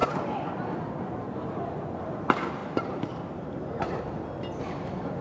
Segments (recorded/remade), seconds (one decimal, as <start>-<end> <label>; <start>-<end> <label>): 0.0-0.6 remade; 0.6-2.6 recorded; 2.6-4.0 remade; 4.0-5.2 recorded